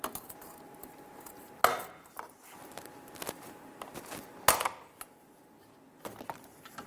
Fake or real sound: real